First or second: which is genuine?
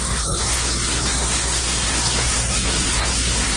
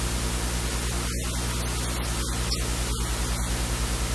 second